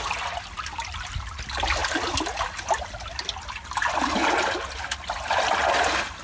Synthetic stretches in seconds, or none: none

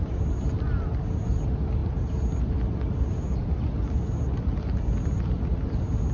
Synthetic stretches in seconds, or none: none